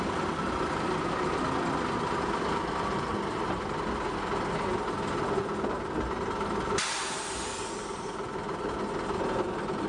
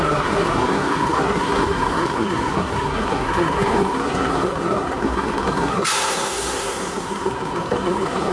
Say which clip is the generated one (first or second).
second